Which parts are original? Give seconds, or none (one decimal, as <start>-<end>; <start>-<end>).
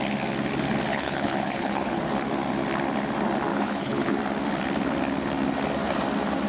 0.0-0.9; 2.0-3.5; 4.1-6.5